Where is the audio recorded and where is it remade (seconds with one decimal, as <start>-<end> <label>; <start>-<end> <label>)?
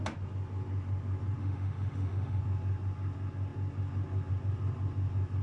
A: 0.0-1.4 recorded; 1.4-2.4 remade; 2.4-5.4 recorded